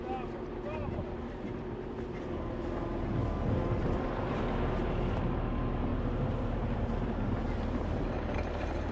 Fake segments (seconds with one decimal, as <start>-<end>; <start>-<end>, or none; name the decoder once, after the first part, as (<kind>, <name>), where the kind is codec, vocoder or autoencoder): 5.9-8.9 (vocoder, BigVGAN v2)

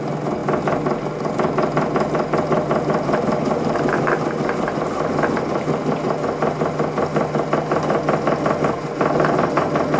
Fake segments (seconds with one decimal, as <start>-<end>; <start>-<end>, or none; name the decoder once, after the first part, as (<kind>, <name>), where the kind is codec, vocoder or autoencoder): none

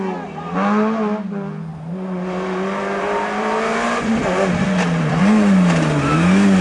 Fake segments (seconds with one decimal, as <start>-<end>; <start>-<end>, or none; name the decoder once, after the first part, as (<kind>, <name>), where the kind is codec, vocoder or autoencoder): 1.7-5.2 (vocoder, BigVGAN v2)

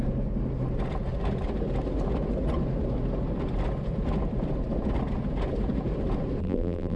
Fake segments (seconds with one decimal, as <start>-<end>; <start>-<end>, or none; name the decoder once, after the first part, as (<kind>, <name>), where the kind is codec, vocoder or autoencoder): 6.4-7.0 (vocoder, BigVGAN v2)